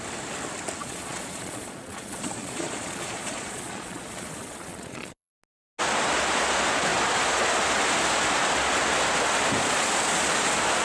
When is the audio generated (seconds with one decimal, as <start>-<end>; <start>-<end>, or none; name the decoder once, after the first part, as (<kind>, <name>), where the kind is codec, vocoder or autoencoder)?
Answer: 0.8-5.3 (vocoder, Vocos)